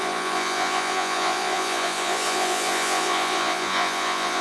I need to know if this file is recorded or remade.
remade